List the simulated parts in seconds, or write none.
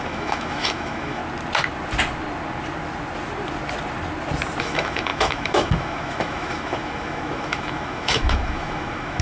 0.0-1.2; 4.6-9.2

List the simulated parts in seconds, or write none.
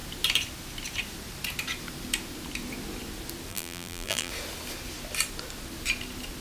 3.5-4.3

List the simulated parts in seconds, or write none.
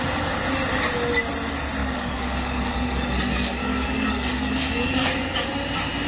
1.8-5.5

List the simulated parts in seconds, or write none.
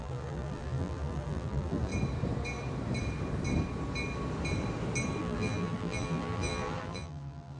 0.0-1.9; 5.2-7.6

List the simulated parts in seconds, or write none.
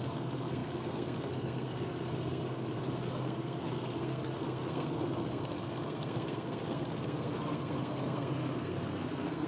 0.0-9.5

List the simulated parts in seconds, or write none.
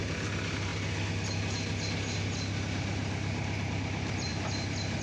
none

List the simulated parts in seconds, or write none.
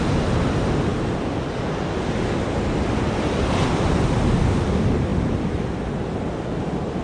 none